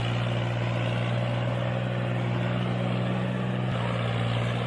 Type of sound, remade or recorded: recorded